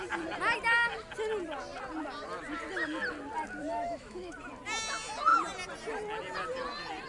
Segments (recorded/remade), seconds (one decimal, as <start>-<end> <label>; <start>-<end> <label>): 0.0-3.6 recorded; 3.6-4.3 remade; 4.3-7.1 recorded